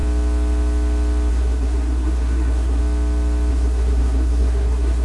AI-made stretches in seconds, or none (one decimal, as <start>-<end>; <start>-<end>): 1.3-2.8; 3.5-5.0